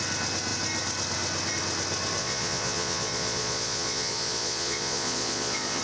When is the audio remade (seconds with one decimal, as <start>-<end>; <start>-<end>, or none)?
2.2-5.8